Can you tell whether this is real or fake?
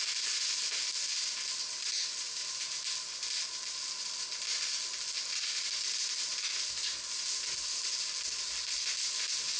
real